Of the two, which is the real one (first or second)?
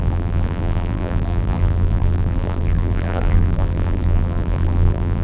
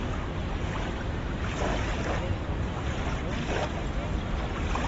second